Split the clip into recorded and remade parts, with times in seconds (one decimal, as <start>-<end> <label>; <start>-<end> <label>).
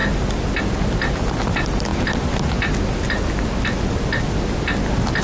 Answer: 0.0-5.2 recorded